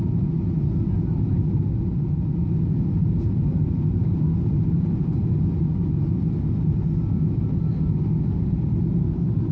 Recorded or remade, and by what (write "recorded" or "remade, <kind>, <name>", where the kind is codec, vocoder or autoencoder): recorded